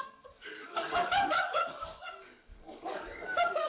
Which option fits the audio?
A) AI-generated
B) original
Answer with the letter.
A